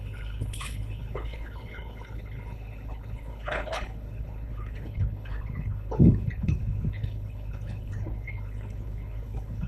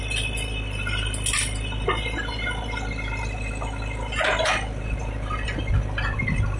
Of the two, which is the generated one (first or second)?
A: first